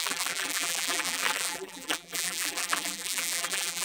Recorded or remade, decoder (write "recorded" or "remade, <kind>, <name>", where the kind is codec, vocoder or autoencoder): remade, vocoder, BigVGAN v2